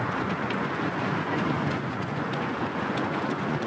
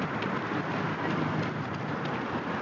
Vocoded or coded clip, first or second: first